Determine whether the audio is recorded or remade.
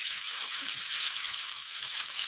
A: remade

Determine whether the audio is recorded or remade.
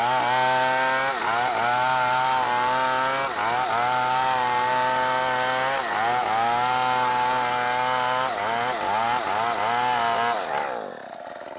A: recorded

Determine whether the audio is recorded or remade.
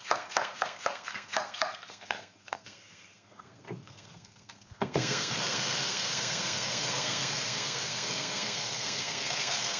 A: remade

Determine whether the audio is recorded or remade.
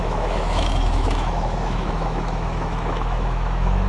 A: remade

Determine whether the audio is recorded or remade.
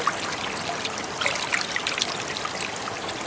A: recorded